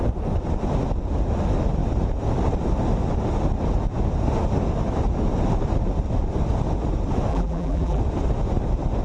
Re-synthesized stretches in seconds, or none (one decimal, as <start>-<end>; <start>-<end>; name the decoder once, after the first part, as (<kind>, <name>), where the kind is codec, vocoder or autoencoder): 7.3-8.0 (vocoder, BigVGAN v2)